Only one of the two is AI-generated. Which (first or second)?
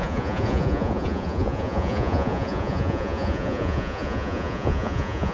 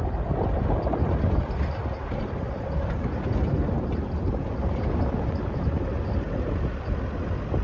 first